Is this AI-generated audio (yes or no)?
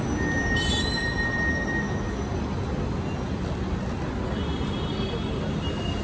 no